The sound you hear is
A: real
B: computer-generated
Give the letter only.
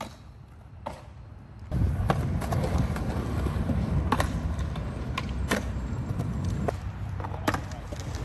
A